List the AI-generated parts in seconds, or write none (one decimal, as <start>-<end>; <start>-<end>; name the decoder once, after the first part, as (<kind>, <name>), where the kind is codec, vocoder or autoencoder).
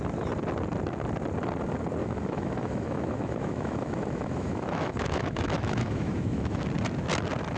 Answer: 2.0-6.6 (autoencoder, DAC-VAE)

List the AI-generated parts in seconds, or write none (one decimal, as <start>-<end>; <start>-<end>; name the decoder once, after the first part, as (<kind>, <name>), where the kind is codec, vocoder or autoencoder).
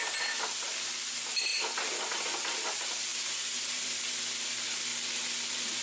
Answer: 3.1-4.1 (vocoder, BigVGAN v2)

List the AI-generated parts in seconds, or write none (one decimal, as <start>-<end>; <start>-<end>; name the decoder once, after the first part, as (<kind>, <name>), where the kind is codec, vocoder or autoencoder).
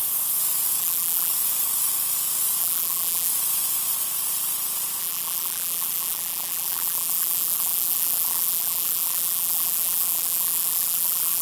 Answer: 0.8-1.3 (vocoder, BigVGAN v2); 2.6-3.3; 5.0-11.4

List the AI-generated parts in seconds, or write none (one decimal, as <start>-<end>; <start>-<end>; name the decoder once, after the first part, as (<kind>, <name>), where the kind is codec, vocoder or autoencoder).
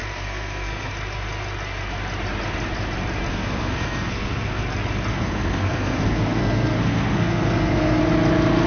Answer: 0.0-0.9 (codec, SNAC); 3.3-4.6; 5.1-8.0